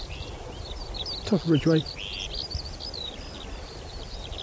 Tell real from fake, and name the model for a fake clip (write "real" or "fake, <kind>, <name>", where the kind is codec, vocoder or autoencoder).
real